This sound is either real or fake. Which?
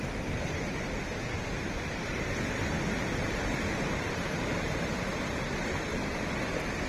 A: fake